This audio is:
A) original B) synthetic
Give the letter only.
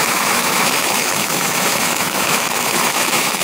B